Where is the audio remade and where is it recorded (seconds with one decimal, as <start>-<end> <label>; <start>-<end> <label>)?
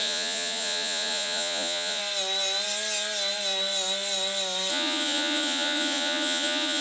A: 0.0-2.0 remade; 2.0-4.7 recorded; 4.7-6.8 remade